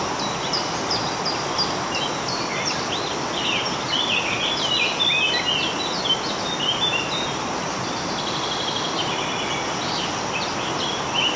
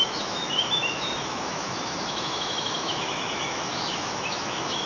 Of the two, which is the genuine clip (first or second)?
first